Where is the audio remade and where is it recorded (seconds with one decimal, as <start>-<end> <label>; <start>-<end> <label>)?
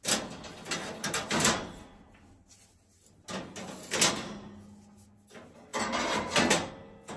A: 0.0-5.7 recorded; 5.7-6.7 remade; 6.7-7.2 recorded